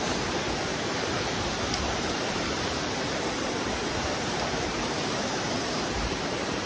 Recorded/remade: remade